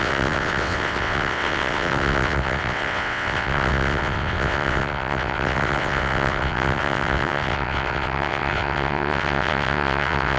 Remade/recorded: remade